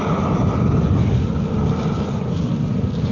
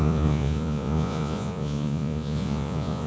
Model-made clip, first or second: second